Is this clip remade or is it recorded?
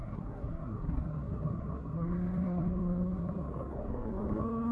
remade